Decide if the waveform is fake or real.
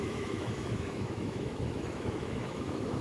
fake